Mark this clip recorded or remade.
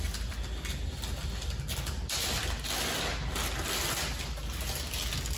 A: recorded